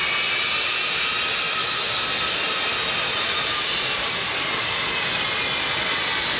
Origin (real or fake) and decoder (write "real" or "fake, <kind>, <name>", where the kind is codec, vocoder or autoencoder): real